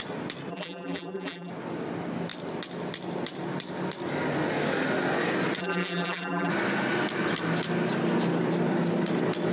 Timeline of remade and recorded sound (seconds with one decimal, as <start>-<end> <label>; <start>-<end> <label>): 0.0-0.5 recorded; 0.5-1.5 remade; 1.5-5.6 recorded; 5.6-6.5 remade; 6.5-9.5 recorded